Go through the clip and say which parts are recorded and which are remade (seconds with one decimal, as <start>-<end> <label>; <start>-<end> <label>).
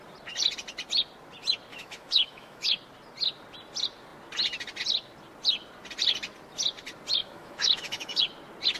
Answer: 0.0-1.7 recorded; 1.7-2.7 remade; 2.7-7.2 recorded; 7.2-8.2 remade; 8.2-8.8 recorded